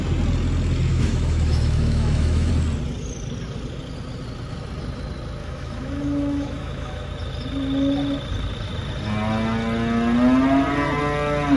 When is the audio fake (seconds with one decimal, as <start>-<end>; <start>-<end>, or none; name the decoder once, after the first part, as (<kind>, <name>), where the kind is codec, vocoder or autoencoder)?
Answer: 0.9-2.5 (autoencoder, DAC-VAE); 5.4-7.1